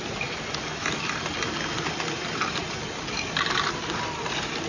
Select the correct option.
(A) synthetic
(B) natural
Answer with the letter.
B